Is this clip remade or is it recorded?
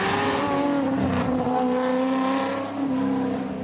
recorded